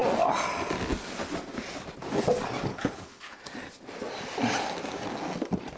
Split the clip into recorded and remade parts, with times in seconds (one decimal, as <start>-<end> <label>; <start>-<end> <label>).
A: 0.0-2.7 recorded; 2.7-3.4 remade; 3.4-5.8 recorded

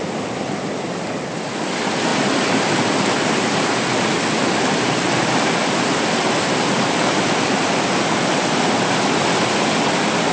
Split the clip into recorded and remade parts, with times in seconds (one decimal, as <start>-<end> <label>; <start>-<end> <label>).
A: 0.0-10.3 recorded

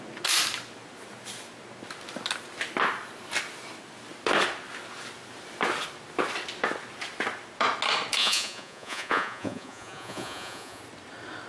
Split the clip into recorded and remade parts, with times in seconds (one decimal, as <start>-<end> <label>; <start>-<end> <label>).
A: 0.0-8.2 recorded; 8.2-10.8 remade; 10.8-11.5 recorded

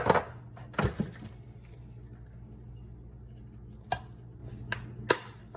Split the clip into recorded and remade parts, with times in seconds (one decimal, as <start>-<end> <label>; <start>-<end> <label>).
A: 0.0-5.6 recorded

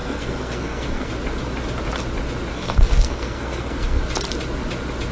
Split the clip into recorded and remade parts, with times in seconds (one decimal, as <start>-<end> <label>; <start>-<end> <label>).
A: 0.0-1.1 remade; 1.1-2.5 recorded; 2.5-4.0 remade; 4.0-5.1 recorded